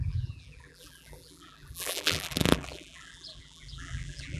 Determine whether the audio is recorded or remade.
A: remade